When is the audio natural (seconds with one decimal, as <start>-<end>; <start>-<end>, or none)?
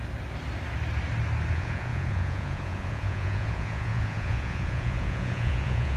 0.0-1.5